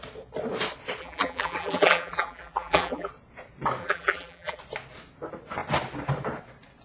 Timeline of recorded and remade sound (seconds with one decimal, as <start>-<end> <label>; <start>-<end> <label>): 0.0-1.0 recorded; 1.0-3.1 remade; 3.1-3.8 recorded; 3.8-4.6 remade; 4.6-6.8 recorded